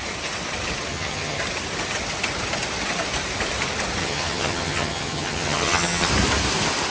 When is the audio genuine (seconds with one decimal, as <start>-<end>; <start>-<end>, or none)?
0.0-0.9; 1.4-4.0; 6.1-6.9